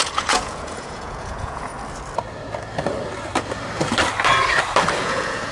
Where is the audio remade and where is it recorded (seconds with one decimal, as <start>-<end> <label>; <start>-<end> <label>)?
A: 0.0-1.7 remade; 1.7-5.0 recorded; 5.0-5.5 remade